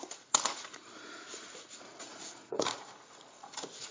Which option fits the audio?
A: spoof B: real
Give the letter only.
A